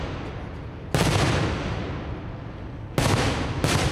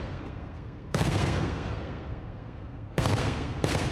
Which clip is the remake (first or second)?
second